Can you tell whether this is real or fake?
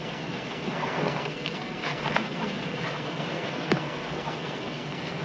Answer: fake